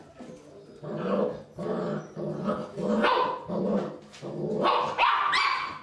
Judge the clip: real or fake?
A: real